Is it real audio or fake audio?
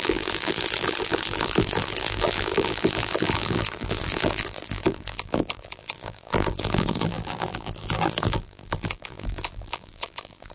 fake